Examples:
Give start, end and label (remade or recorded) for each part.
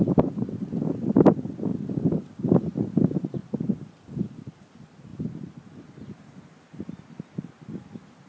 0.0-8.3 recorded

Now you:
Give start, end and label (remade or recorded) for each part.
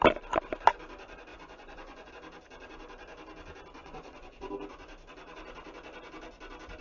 0.0-1.3 recorded; 1.3-2.1 remade; 2.1-3.8 recorded; 3.8-4.5 remade; 4.5-6.8 recorded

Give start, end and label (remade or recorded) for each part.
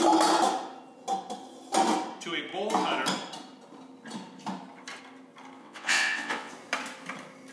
0.0-5.6 recorded; 5.6-6.5 remade; 6.5-7.5 recorded